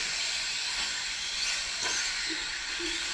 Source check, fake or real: fake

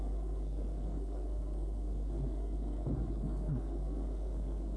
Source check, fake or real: fake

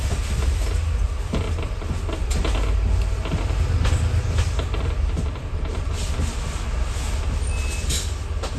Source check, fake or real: real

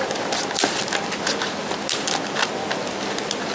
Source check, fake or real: real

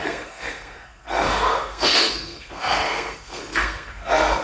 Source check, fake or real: fake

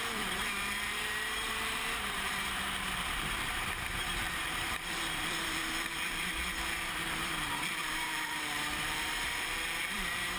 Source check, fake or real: fake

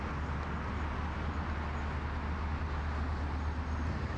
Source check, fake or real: real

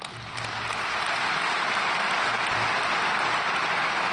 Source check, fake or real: real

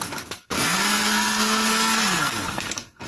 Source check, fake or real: fake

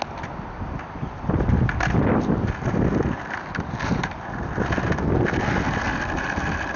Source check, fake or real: real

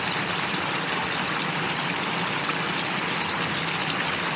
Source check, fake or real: real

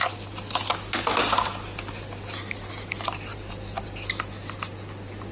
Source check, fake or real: real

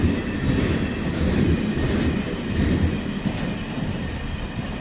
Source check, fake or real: real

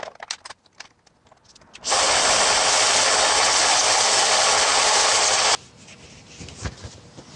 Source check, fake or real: real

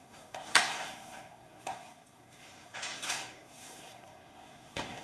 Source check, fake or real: fake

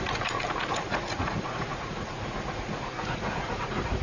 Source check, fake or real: fake